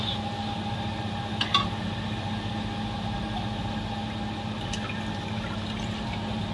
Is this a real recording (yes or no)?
yes